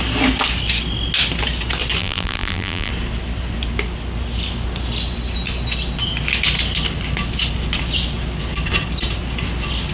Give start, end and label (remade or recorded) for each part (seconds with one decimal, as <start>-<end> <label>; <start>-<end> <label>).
0.0-2.0 recorded; 2.0-2.9 remade; 2.9-9.9 recorded